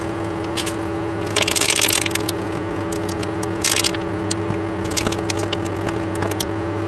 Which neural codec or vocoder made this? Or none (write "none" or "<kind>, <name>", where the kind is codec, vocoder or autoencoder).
none